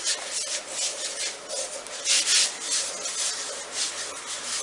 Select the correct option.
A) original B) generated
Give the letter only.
A